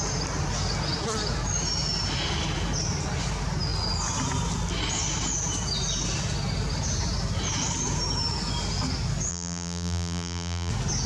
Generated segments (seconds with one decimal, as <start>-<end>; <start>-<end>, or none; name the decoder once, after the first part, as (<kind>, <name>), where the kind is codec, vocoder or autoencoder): 9.3-10.7 (vocoder, BigVGAN v2)